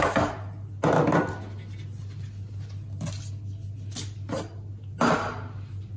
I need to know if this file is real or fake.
real